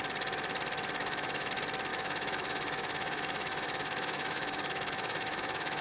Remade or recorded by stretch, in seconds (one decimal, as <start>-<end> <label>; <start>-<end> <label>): 0.0-1.0 recorded; 1.0-1.5 remade; 1.5-1.9 recorded; 1.9-5.8 remade